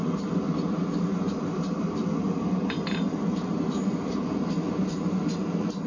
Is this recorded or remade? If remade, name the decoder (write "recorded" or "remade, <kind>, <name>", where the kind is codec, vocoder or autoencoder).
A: remade, vocoder, BigVGAN v2